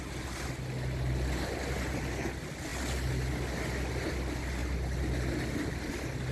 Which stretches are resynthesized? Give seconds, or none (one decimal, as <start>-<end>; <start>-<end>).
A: none